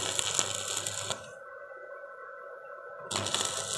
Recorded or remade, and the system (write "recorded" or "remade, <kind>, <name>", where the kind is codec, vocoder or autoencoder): recorded